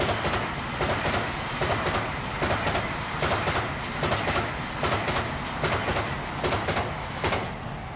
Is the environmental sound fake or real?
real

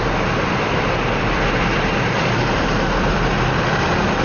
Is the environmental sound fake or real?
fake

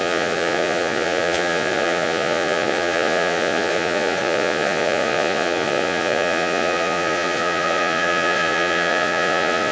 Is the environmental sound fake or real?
fake